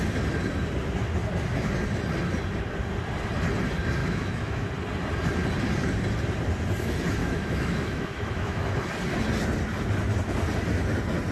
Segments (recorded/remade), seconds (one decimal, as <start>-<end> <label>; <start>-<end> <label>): 0.0-4.0 recorded; 4.0-4.7 remade; 4.7-7.2 recorded; 7.2-8.9 remade; 8.9-11.3 recorded